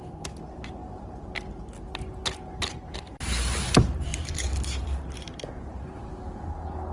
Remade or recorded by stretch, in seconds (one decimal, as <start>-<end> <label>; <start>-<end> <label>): 0.0-4.1 recorded; 4.1-6.1 remade; 6.1-6.9 recorded

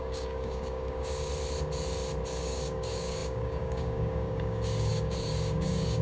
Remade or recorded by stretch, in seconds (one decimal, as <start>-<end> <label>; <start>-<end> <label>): 0.0-1.3 remade; 1.3-2.4 recorded; 2.4-6.0 remade

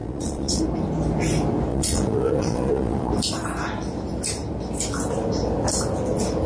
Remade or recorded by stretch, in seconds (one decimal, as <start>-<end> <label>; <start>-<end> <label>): 0.0-0.6 remade; 0.6-1.7 recorded; 1.7-3.1 remade; 3.1-6.5 recorded